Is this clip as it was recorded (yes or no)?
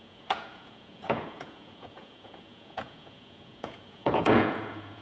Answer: no